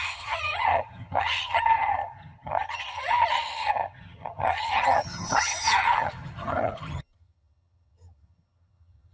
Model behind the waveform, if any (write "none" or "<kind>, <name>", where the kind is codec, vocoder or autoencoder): vocoder, HiFi-GAN